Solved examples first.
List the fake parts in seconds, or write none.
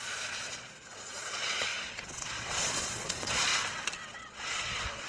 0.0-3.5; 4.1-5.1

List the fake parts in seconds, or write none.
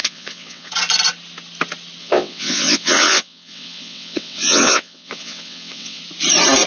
0.0-0.7; 2.0-6.0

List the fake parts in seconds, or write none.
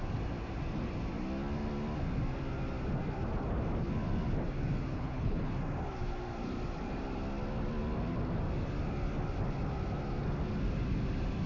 4.9-5.5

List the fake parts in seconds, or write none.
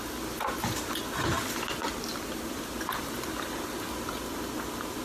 2.1-5.0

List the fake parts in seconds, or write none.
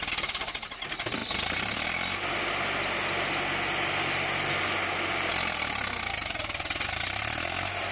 none